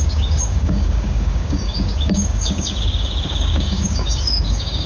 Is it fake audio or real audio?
fake